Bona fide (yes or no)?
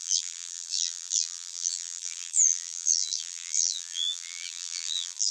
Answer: no